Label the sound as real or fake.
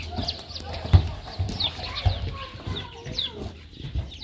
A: real